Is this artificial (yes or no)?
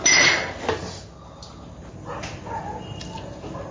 no